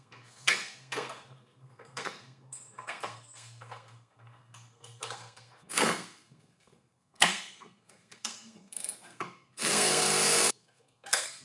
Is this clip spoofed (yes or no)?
yes